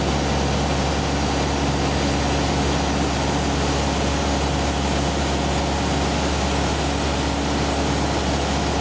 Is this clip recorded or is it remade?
recorded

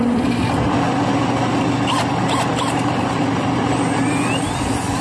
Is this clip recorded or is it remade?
remade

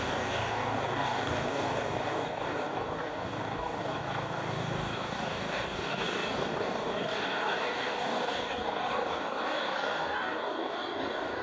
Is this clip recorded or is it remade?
remade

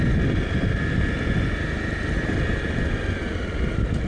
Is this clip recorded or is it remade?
recorded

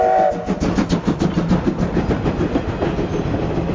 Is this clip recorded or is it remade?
recorded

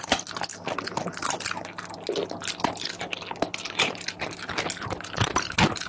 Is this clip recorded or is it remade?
recorded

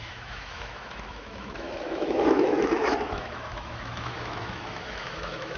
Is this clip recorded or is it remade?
remade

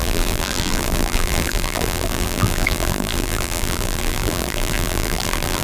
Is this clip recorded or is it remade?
remade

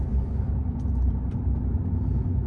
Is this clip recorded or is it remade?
recorded